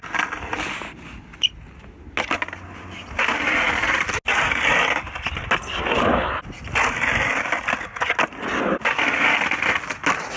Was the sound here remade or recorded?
recorded